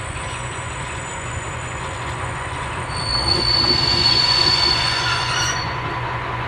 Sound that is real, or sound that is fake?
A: fake